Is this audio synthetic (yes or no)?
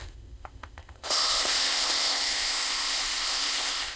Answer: yes